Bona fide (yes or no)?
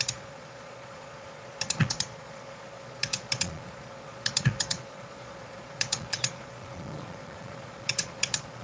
no